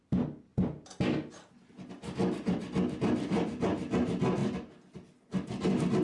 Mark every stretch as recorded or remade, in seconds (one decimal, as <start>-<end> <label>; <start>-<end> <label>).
0.0-6.0 recorded